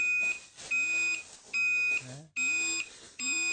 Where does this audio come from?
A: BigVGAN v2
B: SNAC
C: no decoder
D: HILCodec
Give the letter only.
C